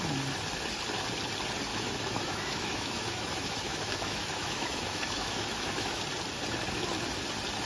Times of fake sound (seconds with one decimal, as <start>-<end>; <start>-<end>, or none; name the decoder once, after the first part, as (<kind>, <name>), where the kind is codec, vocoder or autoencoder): 1.7-6.0 (autoencoder, DAC-VAE)